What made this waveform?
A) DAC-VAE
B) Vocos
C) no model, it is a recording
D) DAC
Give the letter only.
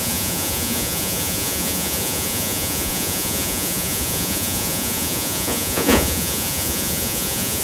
B